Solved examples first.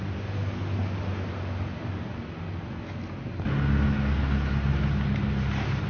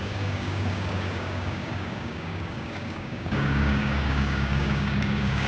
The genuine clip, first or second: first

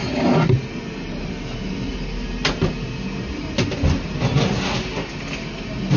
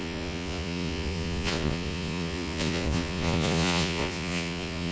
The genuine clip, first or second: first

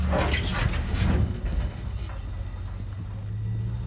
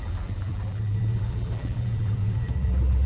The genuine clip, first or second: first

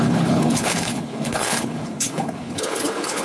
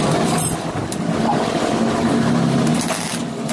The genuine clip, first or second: second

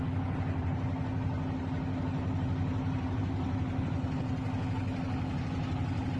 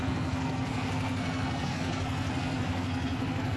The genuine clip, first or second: first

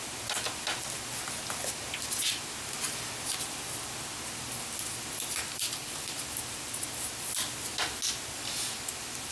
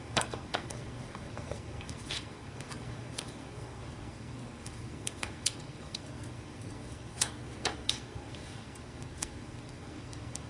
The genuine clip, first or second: first